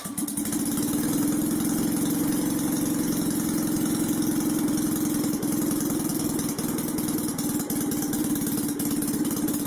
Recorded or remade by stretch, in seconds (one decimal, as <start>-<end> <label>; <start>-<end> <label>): 0.0-9.7 recorded